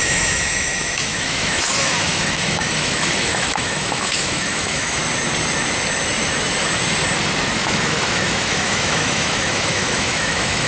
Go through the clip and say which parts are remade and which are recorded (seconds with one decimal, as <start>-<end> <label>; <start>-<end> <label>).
0.0-5.0 remade; 5.0-7.5 recorded; 7.5-10.7 remade